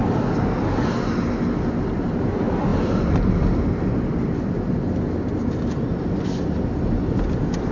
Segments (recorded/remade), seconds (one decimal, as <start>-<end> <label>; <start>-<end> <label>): 0.0-7.7 recorded